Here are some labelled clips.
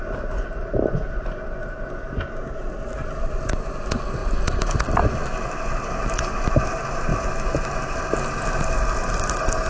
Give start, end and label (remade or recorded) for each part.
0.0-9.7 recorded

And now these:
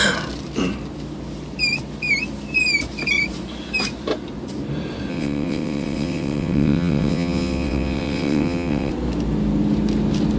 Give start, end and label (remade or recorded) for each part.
0.0-5.1 recorded; 5.1-8.9 remade; 8.9-10.4 recorded

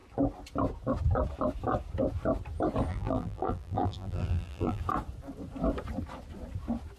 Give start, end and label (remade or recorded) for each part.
0.0-2.9 recorded; 2.9-4.8 remade; 4.8-7.0 recorded